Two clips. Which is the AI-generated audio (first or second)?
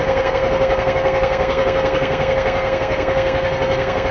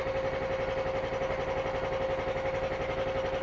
first